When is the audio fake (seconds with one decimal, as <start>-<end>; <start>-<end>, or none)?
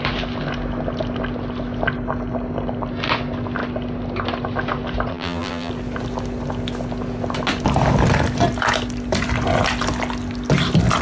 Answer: 5.1-5.7